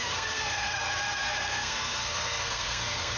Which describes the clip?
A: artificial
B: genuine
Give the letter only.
A